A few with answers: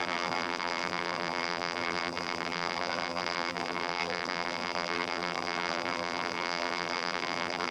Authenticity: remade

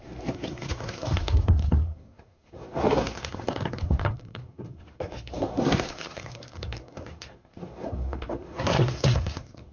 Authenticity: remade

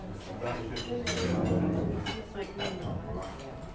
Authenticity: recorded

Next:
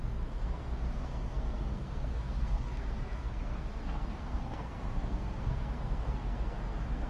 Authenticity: remade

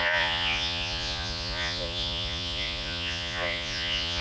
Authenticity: remade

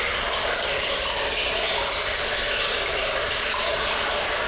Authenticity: recorded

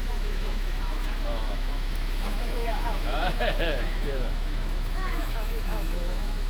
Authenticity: remade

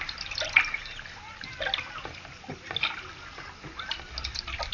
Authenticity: recorded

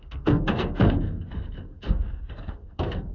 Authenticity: remade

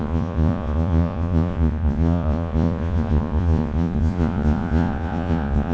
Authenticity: remade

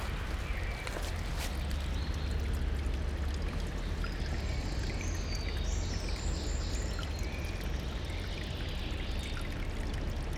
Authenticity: recorded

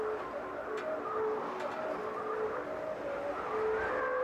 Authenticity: recorded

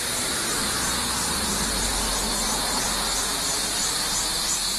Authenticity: recorded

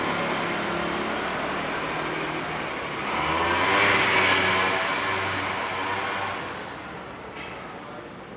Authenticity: recorded